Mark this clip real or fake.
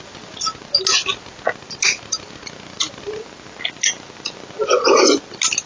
real